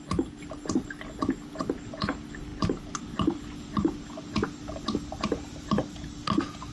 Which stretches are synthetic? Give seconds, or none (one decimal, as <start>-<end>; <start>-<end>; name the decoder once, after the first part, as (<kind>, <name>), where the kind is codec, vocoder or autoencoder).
none